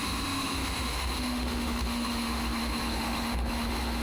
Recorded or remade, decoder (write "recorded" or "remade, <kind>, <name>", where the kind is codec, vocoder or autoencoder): remade, autoencoder, DAC-VAE